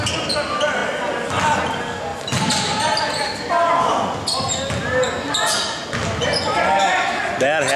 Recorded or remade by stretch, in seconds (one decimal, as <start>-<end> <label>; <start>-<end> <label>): 0.0-7.8 recorded